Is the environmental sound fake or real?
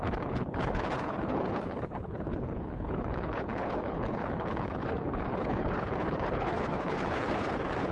fake